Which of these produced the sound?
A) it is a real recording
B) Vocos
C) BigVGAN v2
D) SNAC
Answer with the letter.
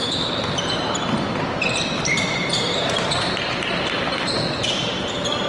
C